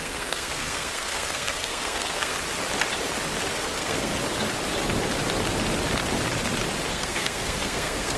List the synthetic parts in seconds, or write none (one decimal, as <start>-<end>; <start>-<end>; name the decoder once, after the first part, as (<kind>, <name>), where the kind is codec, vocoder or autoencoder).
0.0-2.3 (codec, SNAC); 3.5-4.1; 6.9-8.2